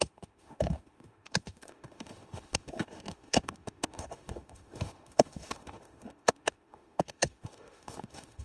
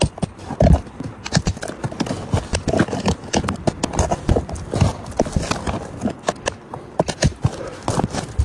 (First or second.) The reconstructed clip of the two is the first